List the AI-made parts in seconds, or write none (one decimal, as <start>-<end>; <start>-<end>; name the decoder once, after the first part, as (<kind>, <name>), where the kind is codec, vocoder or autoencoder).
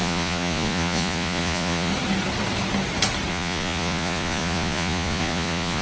0.0-1.9 (vocoder, Vocos); 3.3-5.8